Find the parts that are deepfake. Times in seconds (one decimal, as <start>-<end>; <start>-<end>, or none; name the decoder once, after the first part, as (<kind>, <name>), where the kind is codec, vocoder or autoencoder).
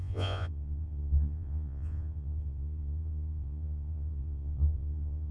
0.0-5.3 (vocoder, Vocos)